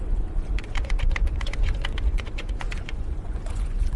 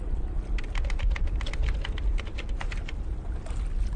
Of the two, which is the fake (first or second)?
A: first